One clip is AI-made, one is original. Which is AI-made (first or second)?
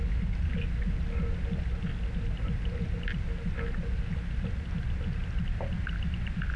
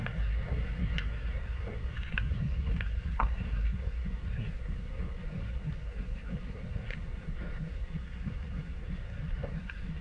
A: second